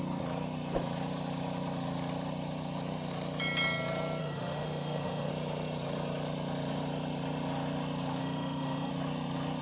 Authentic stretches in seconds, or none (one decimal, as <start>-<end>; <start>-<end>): 0.0-4.2; 5.3-8.2; 8.9-9.6